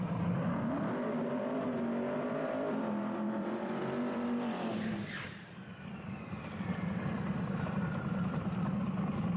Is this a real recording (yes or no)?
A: no